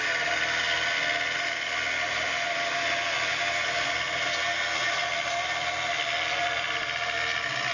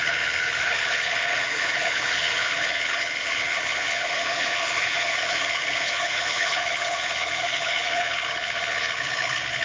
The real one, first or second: first